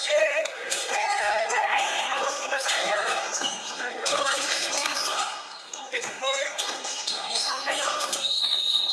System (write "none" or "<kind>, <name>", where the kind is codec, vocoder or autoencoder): codec, SNAC